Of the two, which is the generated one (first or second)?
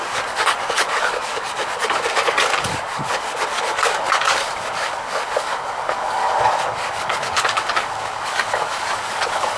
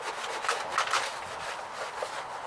first